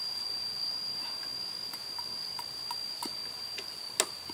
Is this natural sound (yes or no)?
yes